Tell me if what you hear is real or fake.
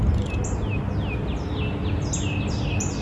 real